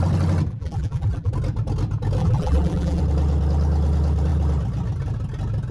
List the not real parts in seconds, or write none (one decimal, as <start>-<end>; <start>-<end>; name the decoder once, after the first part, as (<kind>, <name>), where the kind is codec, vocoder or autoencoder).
0.5-1.3 (vocoder, BigVGAN v2); 2.2-3.0